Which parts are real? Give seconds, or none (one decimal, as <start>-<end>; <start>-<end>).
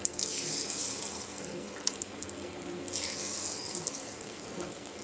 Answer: none